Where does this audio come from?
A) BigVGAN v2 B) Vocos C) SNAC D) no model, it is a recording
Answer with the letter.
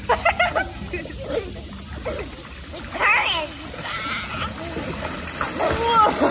D